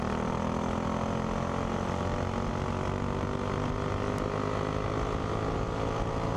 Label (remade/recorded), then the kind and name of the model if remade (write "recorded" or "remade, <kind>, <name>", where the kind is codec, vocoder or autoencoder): recorded